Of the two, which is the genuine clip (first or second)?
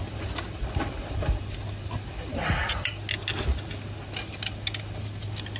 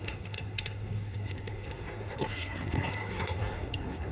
first